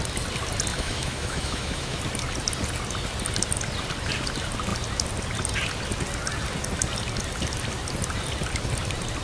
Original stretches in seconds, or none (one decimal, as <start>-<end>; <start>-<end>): 0.0-0.7; 2.0-9.2